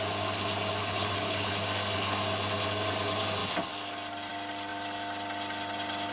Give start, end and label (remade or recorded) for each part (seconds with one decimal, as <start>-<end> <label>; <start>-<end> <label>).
0.0-0.8 recorded; 0.8-1.5 remade; 1.5-6.1 recorded

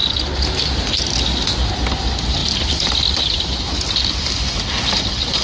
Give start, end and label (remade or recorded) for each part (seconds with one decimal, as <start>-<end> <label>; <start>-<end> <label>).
0.0-5.4 recorded

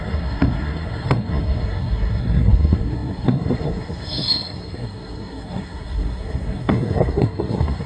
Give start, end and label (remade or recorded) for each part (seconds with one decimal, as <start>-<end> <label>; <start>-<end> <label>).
0.0-7.9 remade